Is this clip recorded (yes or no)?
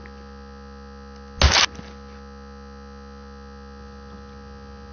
yes